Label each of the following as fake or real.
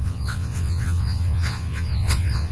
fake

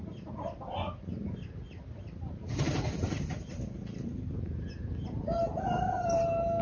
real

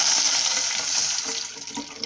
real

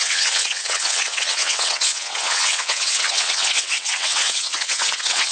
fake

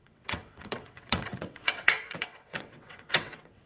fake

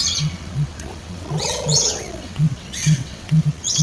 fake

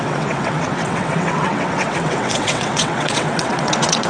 fake